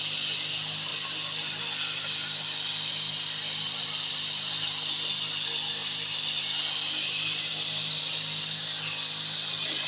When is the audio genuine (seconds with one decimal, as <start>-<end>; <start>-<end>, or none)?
0.0-7.5; 8.0-9.9